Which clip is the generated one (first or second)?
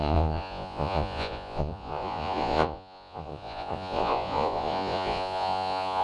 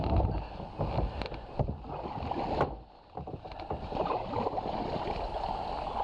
first